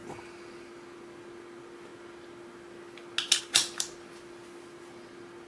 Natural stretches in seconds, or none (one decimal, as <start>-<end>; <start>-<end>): 0.0-5.5